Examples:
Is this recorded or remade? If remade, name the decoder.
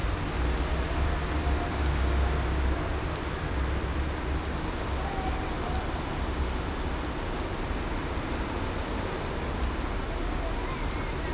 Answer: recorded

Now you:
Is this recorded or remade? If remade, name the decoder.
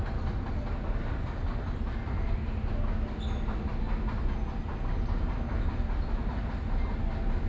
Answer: recorded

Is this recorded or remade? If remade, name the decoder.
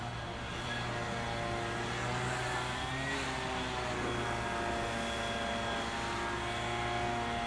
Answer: recorded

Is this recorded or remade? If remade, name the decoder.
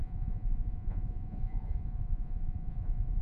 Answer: remade, vocoder, Vocos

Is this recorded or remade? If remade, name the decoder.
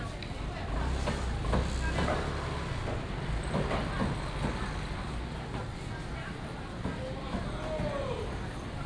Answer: recorded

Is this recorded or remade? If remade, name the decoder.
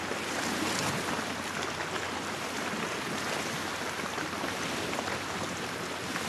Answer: recorded